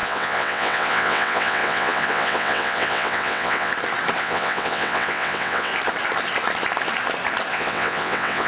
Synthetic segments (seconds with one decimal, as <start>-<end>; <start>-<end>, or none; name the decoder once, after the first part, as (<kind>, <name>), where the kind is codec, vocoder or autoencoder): 0.0-3.7 (vocoder, WaveNeXt); 4.2-5.7; 7.5-8.5

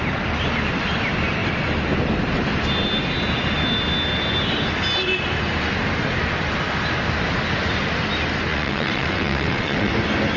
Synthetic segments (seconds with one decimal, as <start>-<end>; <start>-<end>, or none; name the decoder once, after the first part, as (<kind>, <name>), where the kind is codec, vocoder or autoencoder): 8.5-9.9 (vocoder, WaveNeXt)

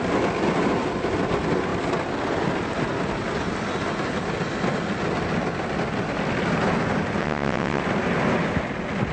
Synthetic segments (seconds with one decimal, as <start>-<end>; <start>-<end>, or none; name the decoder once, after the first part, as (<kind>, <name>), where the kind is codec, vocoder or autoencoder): 7.2-7.8 (vocoder, WaveNeXt)

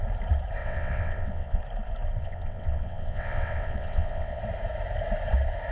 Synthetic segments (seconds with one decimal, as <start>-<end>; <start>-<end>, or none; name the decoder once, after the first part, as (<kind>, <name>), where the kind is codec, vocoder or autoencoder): 0.6-1.6 (vocoder, WaveNeXt); 2.2-4.4

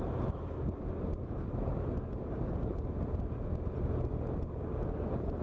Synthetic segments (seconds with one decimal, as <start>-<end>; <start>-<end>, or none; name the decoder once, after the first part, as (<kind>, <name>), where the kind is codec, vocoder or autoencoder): none

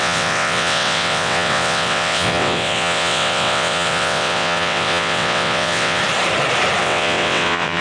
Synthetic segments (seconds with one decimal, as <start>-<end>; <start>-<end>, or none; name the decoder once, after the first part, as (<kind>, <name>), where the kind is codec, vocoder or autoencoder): 0.0-6.0 (vocoder, WaveNeXt); 6.8-7.8